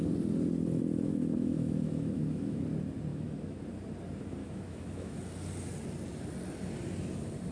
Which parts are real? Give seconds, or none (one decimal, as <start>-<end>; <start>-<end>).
0.0-1.1; 2.6-3.1; 3.6-4.4; 5.2-7.5